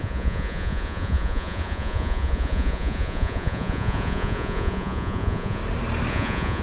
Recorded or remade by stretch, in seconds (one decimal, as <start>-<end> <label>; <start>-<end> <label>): 0.0-5.6 remade; 5.6-6.1 recorded; 6.1-6.6 remade